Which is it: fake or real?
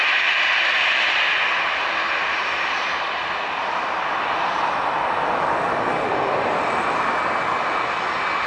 real